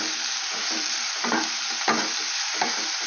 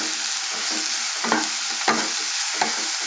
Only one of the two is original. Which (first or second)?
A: second